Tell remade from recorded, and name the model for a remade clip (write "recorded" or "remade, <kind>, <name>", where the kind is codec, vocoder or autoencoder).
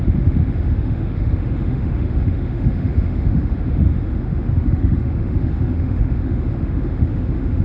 remade, autoencoder, DAC-VAE